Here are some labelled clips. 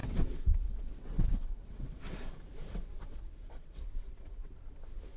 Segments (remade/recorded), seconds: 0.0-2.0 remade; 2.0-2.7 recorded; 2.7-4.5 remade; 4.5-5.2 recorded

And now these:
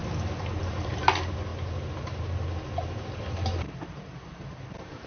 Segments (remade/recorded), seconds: 0.0-0.6 recorded; 0.6-1.5 remade; 1.5-3.6 recorded; 3.6-5.1 remade

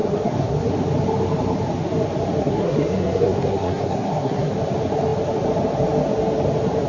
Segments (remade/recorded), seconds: 0.0-0.7 remade; 0.7-2.4 recorded; 2.4-4.5 remade; 4.5-6.9 recorded

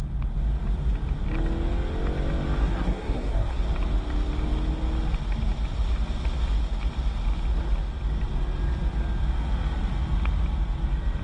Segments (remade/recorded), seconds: 0.0-2.6 recorded; 2.6-3.6 remade; 3.6-11.2 recorded

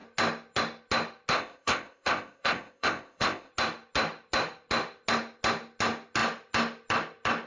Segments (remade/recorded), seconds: 0.0-1.3 recorded; 1.3-3.5 remade; 3.5-7.5 recorded